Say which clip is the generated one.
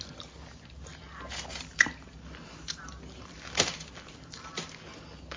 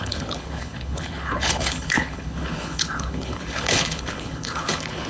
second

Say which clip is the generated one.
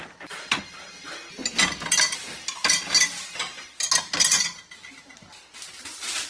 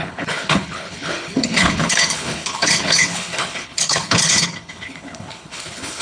second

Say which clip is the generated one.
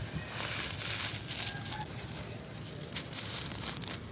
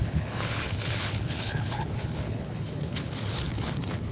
second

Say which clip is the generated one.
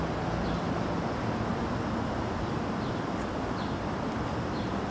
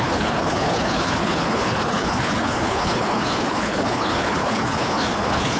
second